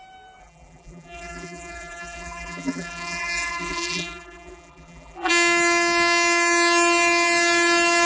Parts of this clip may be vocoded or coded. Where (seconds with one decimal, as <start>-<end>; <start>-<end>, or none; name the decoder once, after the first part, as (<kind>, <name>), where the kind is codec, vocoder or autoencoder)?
0.4-5.3 (vocoder, BigVGAN v2)

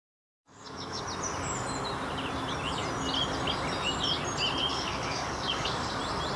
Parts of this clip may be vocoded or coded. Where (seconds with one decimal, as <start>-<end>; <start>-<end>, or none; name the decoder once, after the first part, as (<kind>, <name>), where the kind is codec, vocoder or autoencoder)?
0.0-1.0 (codec, DAC); 4.7-6.0